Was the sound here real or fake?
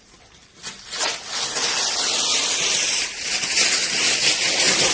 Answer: fake